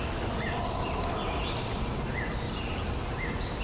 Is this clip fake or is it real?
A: real